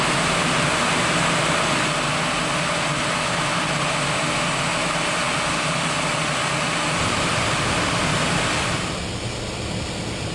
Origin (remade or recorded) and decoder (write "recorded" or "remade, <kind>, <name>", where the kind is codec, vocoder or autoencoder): recorded